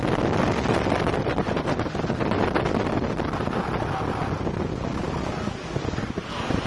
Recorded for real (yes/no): yes